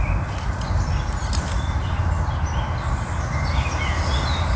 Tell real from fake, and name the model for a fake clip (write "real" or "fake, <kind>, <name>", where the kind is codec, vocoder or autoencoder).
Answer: real